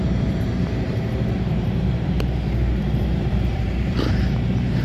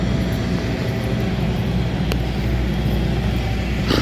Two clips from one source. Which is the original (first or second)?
second